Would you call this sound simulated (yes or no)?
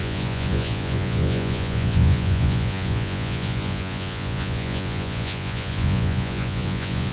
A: yes